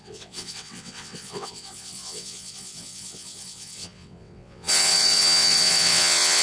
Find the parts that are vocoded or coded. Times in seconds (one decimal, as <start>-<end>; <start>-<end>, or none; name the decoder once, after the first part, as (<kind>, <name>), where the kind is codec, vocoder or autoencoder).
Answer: 0.0-6.4 (vocoder, WaveNeXt)